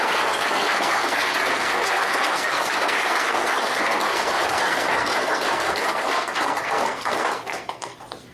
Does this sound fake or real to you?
fake